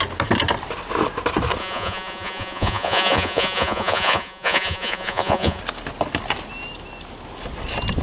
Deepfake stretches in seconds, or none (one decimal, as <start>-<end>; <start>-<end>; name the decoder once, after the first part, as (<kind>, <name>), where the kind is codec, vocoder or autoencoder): 1.6-5.6 (vocoder, Vocos)